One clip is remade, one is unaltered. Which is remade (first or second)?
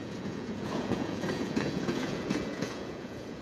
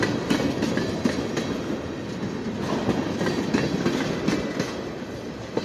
first